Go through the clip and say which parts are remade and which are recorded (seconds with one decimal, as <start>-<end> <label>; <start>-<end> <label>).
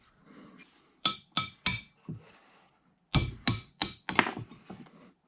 0.0-5.3 recorded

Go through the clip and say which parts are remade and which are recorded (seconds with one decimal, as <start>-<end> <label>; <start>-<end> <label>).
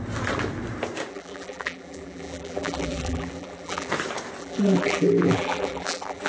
0.0-1.1 recorded; 1.1-3.9 remade; 3.9-4.4 recorded; 4.4-6.3 remade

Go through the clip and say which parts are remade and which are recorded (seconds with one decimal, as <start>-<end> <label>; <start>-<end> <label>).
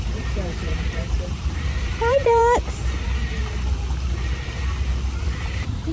0.0-2.4 remade; 2.4-5.2 recorded; 5.2-5.9 remade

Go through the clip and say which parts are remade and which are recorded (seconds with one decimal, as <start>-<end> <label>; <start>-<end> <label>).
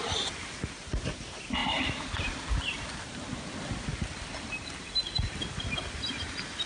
0.0-6.7 recorded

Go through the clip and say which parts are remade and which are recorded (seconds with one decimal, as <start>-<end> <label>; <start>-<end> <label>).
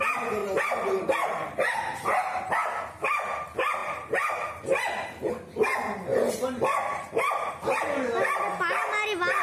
0.0-0.4 recorded; 0.4-2.7 remade; 2.7-3.8 recorded; 3.8-5.3 remade; 5.3-6.1 recorded; 6.1-7.5 remade; 7.5-9.4 recorded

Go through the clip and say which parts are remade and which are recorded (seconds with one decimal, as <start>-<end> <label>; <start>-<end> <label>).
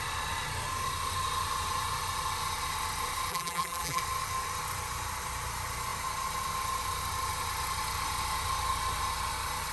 0.0-3.3 recorded; 3.3-4.0 remade; 4.0-9.7 recorded